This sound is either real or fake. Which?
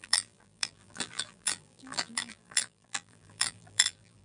fake